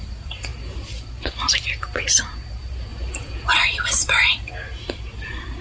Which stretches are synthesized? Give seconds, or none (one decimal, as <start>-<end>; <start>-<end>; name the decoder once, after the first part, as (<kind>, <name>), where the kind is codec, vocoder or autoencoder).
0.0-0.5 (vocoder, BigVGAN v2); 1.1-2.9; 3.5-5.6